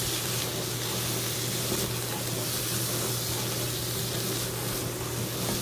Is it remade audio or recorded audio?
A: recorded